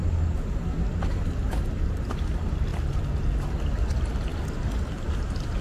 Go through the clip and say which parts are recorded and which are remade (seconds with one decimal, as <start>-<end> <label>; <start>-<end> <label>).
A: 0.0-5.6 recorded